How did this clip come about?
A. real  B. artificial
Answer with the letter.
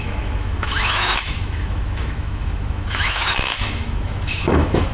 B